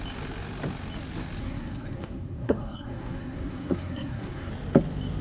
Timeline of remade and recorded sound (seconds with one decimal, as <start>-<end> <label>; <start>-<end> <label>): 0.0-1.4 recorded; 1.4-4.5 remade; 4.5-5.2 recorded